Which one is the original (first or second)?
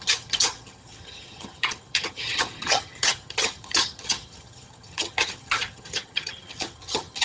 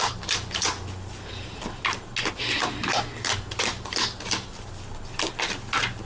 second